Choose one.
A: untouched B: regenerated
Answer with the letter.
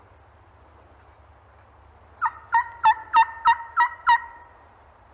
A